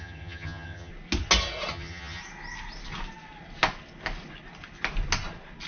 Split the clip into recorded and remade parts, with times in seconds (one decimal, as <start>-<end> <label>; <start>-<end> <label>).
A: 0.0-0.9 remade; 0.9-1.7 recorded; 1.7-2.2 remade; 2.2-5.7 recorded